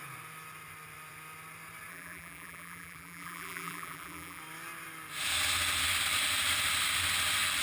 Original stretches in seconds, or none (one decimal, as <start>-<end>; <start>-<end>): 0.0-1.9; 4.4-7.6